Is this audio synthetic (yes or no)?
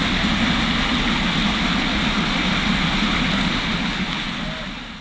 no